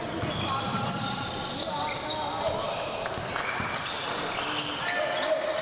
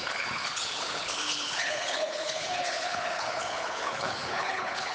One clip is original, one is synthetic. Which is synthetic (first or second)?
second